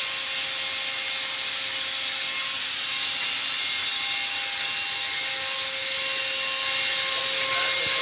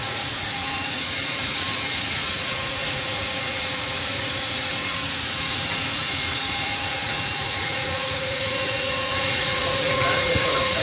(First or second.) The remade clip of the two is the second